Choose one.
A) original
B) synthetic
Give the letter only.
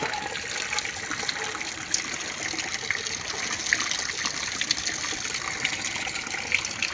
A